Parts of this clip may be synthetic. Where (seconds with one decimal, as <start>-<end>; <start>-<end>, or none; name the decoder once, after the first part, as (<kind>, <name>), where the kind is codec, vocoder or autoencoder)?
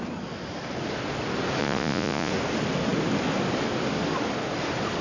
1.6-2.3 (vocoder, Vocos)